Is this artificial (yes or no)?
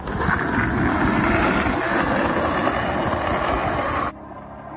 no